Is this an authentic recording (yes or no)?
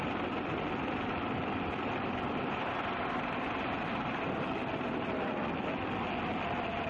yes